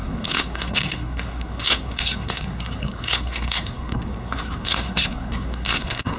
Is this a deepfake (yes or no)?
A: yes